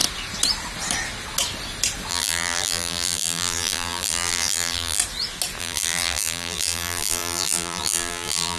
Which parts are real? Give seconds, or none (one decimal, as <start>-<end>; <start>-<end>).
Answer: 0.0-2.1; 5.0-5.6